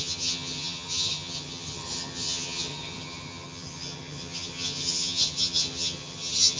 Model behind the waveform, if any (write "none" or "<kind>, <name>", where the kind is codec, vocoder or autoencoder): vocoder, HiFi-GAN